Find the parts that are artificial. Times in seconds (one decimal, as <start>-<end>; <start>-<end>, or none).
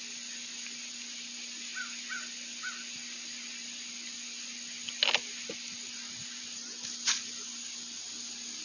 none